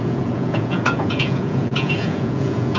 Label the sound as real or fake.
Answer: fake